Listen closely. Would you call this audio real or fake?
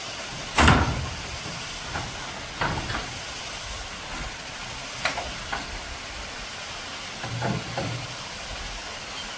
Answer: real